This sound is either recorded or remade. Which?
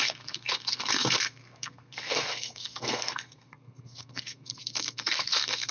remade